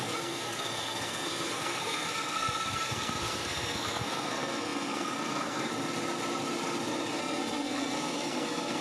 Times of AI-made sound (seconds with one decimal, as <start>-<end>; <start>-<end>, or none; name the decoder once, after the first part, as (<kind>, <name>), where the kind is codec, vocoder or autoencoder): 0.0-5.7 (codec, SNAC); 7.2-8.8